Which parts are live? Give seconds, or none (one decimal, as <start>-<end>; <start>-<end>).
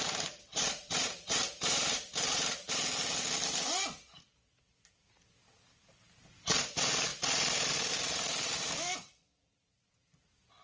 2.9-5.9; 7.1-9.1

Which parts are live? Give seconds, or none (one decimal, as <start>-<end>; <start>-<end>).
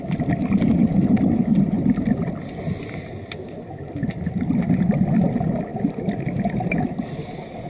0.0-7.7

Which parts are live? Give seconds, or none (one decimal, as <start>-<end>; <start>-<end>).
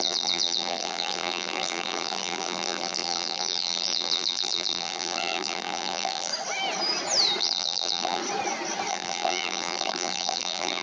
6.3-7.4; 8.2-8.9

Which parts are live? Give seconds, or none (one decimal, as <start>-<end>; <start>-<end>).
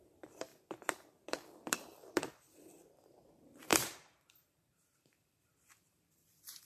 0.5-3.1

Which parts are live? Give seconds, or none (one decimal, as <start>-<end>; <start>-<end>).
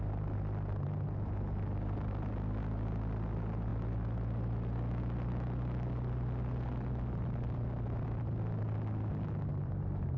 0.0-9.5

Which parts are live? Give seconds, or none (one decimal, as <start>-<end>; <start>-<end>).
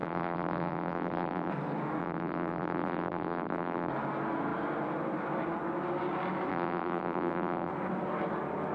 1.5-2.0; 3.9-6.5; 7.7-8.7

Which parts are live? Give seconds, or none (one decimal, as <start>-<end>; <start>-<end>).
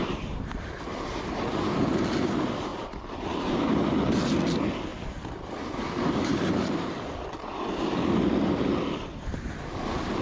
0.0-2.7; 3.2-4.9; 8.2-10.2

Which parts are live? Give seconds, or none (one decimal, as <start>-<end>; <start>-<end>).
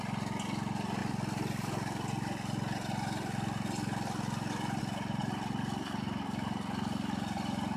0.0-7.8